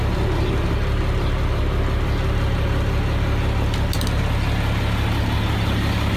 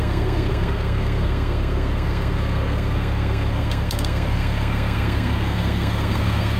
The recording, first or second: first